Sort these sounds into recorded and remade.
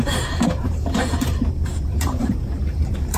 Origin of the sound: remade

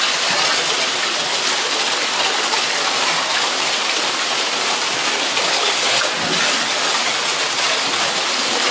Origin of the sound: recorded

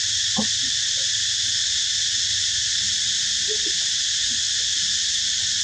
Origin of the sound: remade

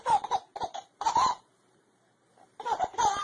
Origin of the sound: remade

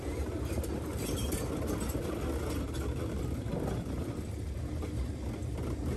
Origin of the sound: recorded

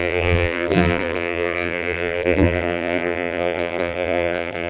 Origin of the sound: remade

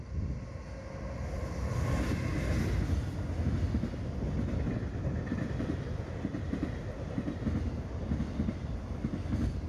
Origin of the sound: recorded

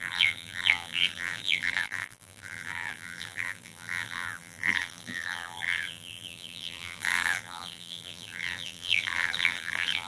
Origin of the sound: remade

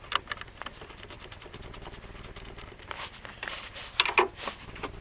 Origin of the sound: recorded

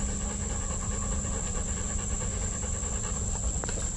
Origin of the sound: recorded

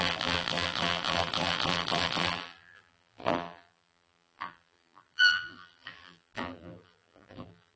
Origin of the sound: remade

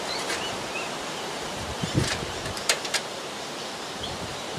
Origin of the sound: remade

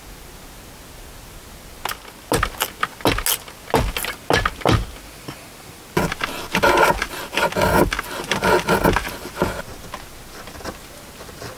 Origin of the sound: recorded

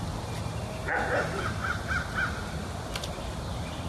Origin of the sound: recorded